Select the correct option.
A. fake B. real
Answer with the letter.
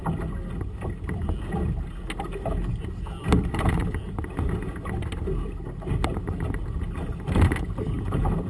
B